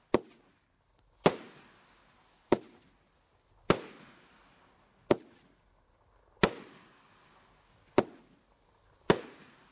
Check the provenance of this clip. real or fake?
real